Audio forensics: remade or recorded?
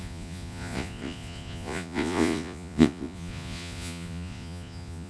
remade